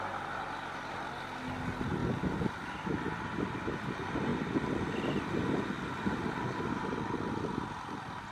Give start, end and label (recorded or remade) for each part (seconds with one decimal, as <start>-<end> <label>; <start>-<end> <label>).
0.0-8.3 recorded